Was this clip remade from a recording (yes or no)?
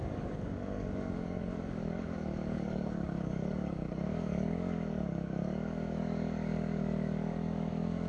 yes